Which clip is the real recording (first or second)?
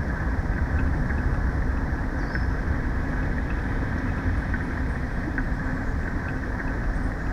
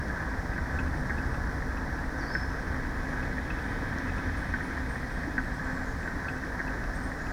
second